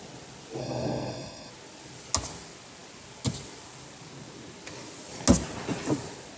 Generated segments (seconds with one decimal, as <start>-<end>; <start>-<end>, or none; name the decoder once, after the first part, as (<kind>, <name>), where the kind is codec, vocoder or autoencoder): 0.6-1.5 (codec, SNAC)